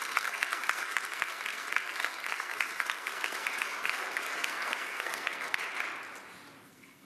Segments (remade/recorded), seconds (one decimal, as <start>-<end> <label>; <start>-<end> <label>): 0.0-5.6 remade; 5.6-6.6 recorded; 6.6-7.1 remade